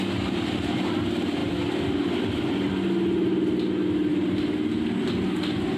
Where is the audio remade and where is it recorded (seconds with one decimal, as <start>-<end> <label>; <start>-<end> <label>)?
0.0-1.4 recorded; 1.4-2.7 remade; 2.7-5.8 recorded

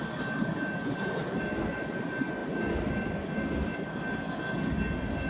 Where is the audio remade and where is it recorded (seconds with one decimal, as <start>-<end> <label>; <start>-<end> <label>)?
0.0-5.3 recorded

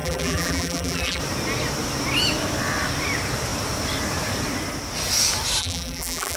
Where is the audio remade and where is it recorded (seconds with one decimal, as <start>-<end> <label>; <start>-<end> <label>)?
0.0-1.2 remade; 1.2-5.6 recorded; 5.6-6.4 remade